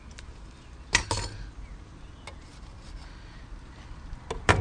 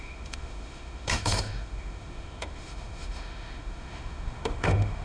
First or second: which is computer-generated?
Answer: second